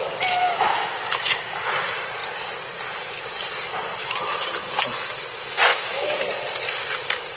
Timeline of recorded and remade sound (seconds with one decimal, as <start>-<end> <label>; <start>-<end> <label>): 0.0-0.4 recorded; 0.4-0.9 remade; 0.9-5.7 recorded; 5.7-6.2 remade; 6.2-7.4 recorded